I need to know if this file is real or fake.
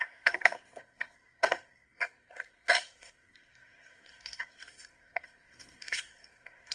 fake